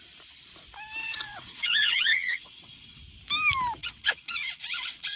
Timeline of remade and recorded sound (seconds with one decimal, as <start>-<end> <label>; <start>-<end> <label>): 0.0-1.0 recorded; 1.0-3.0 remade; 3.0-3.8 recorded; 3.8-5.2 remade

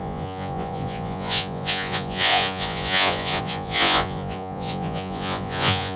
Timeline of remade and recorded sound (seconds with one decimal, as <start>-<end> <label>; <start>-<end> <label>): 0.0-6.0 remade